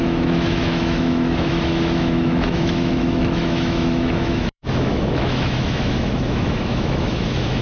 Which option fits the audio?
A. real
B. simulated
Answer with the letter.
B